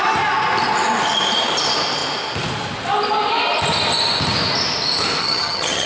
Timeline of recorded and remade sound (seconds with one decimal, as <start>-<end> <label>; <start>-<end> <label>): 0.0-5.2 recorded; 5.2-5.9 remade